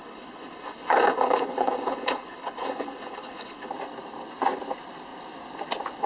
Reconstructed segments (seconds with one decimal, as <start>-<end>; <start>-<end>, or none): 0.0-3.7